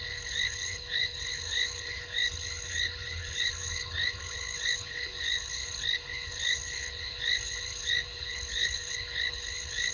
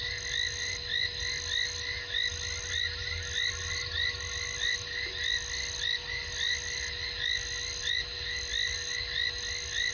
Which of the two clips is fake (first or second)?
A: first